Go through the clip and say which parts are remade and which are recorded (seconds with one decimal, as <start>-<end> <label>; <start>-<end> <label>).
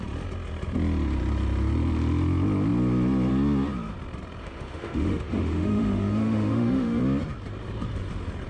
0.0-4.4 recorded; 4.4-7.0 remade; 7.0-8.5 recorded